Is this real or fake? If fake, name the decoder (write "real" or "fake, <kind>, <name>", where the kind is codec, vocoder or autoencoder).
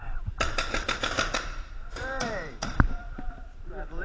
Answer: fake, vocoder, BigVGAN v2